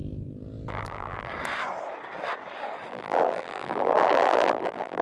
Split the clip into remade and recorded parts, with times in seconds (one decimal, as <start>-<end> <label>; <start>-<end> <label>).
0.0-0.7 recorded; 0.7-1.3 remade; 1.3-2.9 recorded; 2.9-5.0 remade